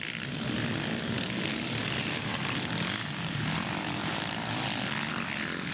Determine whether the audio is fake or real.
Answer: real